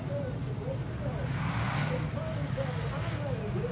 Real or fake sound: real